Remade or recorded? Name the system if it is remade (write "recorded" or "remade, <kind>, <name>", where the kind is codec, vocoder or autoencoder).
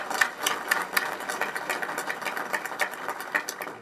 recorded